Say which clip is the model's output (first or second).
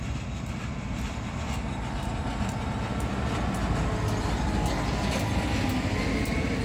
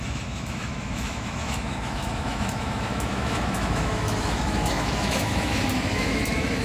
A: second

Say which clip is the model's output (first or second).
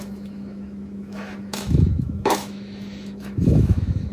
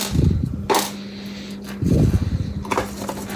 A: first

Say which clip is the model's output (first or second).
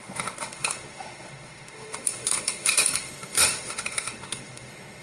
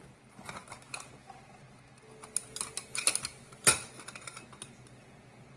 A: first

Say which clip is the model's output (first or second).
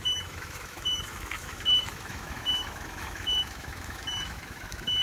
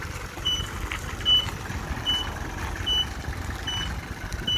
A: first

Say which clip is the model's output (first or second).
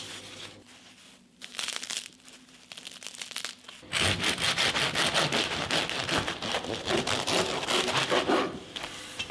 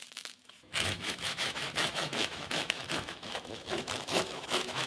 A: second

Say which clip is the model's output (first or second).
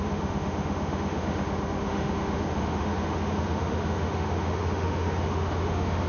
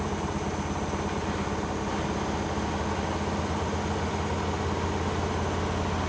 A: first